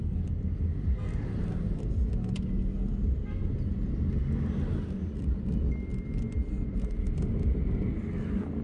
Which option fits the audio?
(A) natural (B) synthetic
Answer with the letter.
A